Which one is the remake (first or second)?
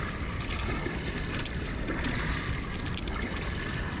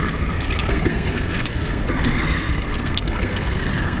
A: second